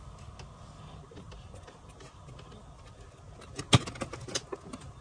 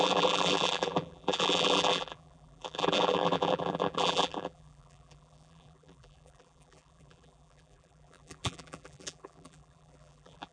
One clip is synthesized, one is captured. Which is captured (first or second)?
first